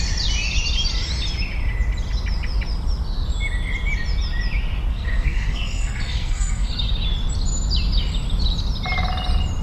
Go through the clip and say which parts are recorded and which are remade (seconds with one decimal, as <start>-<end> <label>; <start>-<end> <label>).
0.0-4.9 recorded; 4.9-6.7 remade; 6.7-9.6 recorded